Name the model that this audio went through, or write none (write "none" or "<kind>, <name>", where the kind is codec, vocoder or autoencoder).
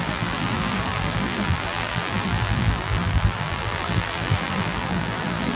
vocoder, BigVGAN v2